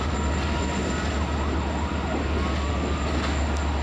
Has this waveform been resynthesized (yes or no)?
no